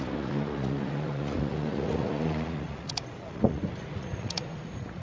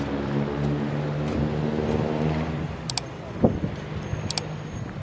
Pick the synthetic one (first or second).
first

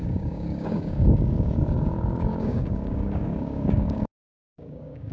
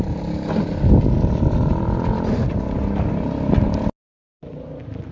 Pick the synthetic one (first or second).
first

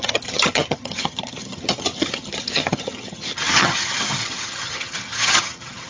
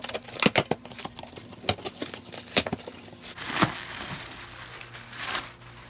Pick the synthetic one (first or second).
first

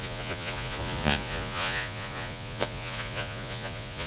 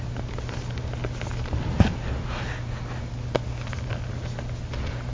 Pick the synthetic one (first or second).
first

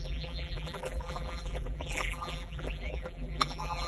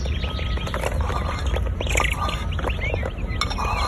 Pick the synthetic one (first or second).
first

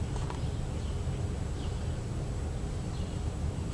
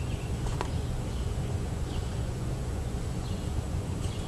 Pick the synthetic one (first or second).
second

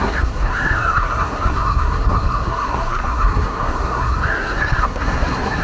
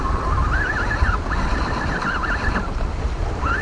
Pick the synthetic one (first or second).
first